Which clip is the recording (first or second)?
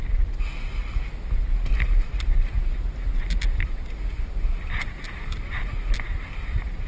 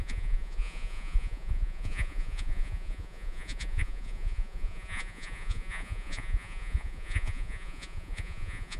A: first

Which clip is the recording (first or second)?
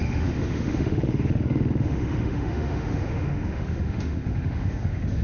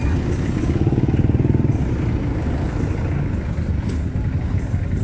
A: second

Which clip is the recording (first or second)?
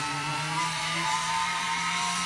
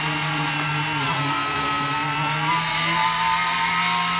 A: second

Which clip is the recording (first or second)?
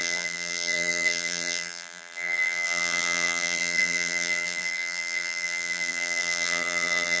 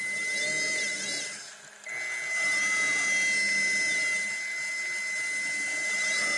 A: second